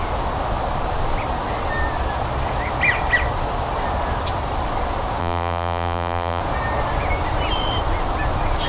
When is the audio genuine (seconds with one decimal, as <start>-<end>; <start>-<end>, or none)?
0.0-5.2; 6.4-8.7